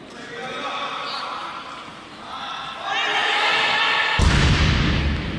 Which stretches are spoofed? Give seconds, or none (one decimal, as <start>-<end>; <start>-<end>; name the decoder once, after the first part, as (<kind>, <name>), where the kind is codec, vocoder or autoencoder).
none